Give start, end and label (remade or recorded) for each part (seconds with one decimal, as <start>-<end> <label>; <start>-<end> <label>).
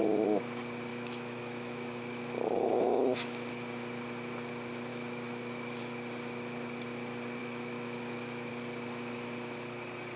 0.0-0.9 recorded; 0.9-3.5 remade; 3.5-4.9 recorded; 4.9-5.8 remade; 5.8-7.4 recorded; 7.4-8.5 remade; 8.5-10.2 recorded